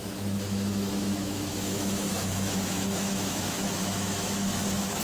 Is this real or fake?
fake